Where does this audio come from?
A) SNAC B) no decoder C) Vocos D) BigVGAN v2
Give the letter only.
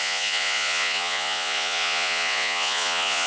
C